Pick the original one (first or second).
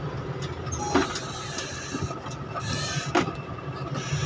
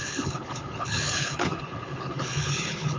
first